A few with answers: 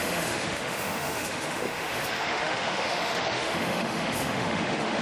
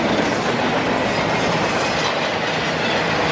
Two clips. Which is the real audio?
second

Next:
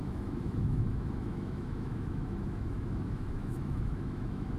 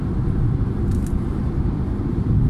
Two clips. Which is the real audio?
second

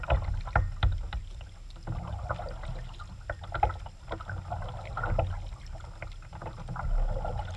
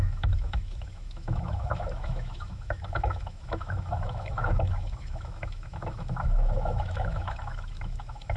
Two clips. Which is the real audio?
first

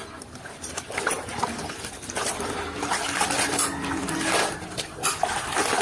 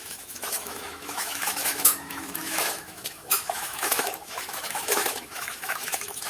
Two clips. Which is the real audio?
first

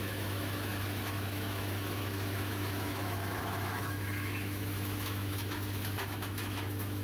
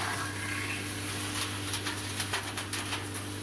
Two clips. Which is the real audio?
second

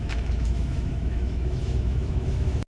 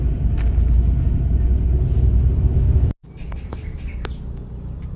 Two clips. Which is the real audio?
second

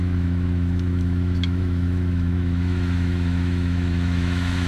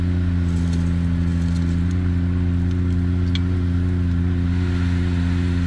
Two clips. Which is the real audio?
second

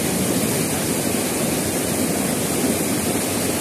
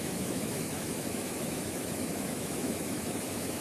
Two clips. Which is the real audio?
first